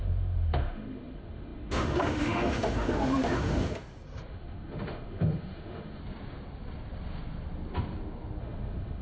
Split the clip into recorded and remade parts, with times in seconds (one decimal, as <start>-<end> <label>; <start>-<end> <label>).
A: 0.0-6.0 remade; 6.0-8.4 recorded; 8.4-9.0 remade